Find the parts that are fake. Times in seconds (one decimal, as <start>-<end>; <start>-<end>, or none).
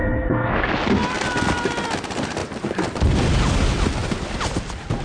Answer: 0.0-0.5